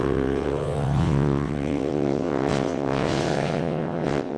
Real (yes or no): no